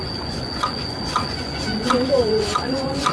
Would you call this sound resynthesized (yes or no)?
yes